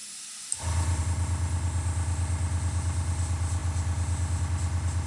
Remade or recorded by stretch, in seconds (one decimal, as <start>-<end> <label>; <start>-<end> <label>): 0.0-5.1 recorded